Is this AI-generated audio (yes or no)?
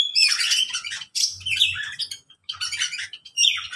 yes